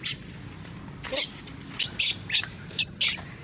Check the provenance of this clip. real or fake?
real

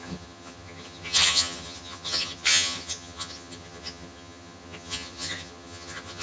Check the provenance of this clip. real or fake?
fake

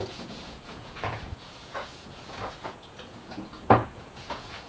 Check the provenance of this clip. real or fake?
fake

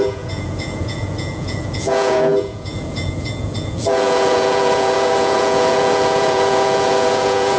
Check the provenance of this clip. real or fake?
fake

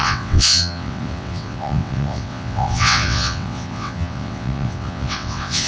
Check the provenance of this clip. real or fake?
fake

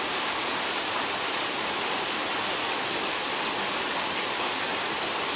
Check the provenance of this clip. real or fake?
fake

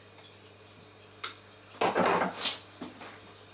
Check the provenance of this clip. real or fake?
real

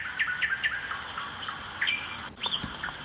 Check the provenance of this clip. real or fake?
real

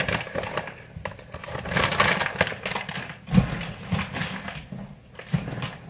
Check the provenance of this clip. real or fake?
real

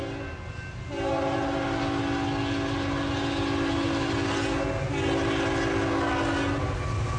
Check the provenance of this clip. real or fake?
real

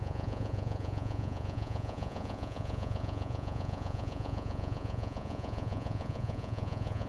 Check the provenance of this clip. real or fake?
fake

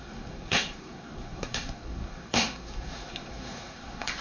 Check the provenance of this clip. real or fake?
fake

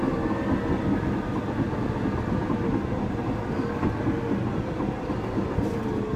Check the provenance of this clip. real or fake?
real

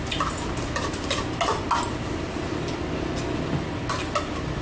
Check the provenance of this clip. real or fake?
real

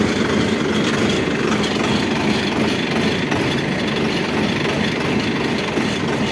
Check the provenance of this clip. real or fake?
real